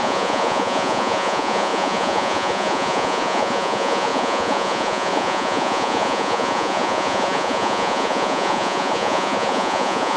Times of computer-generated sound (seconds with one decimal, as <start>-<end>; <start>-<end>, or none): 0.0-10.2